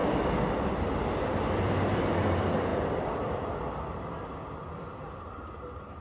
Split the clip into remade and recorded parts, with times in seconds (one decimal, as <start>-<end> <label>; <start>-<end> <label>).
0.0-6.0 recorded